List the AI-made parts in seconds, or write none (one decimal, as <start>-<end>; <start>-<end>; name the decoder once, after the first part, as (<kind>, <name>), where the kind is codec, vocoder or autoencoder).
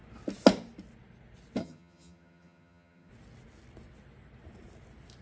1.6-3.1 (vocoder, HiFi-GAN)